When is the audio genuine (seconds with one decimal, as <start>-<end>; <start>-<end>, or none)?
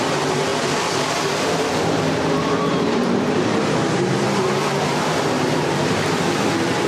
0.0-2.7; 4.7-6.9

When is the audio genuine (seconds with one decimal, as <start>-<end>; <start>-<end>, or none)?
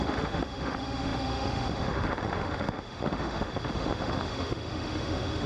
none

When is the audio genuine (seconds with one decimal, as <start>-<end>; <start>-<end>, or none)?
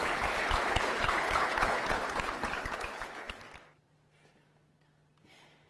3.4-5.7